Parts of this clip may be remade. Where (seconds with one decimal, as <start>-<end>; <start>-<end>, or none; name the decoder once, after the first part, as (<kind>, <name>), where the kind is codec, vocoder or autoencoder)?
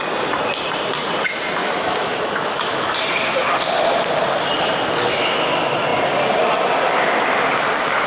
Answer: 1.6-2.9 (autoencoder, DAC-VAE)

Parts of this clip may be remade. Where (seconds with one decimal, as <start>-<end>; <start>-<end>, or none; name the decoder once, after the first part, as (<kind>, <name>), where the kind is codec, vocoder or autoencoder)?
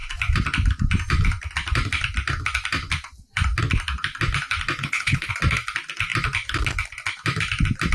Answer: 4.8-5.3 (codec, HILCodec)